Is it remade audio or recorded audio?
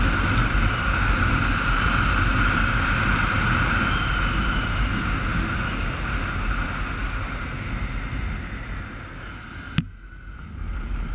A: recorded